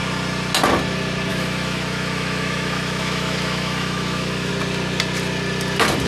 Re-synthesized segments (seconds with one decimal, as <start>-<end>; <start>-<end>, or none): 1.3-4.5